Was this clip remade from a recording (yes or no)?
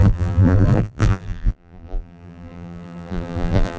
yes